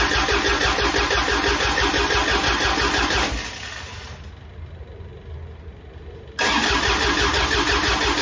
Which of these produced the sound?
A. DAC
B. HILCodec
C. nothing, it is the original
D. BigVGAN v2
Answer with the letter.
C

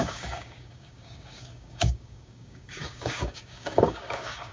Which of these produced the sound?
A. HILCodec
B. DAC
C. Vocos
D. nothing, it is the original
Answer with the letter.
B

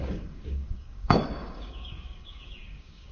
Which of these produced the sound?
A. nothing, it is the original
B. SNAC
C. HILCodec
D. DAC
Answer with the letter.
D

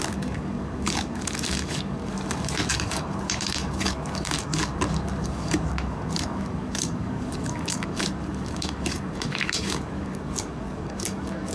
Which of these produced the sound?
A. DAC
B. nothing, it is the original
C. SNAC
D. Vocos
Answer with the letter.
A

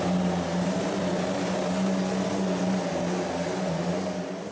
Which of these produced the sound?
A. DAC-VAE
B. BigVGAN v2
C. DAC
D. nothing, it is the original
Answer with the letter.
D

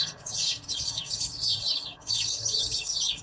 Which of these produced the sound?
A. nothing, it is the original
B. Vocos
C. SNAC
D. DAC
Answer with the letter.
D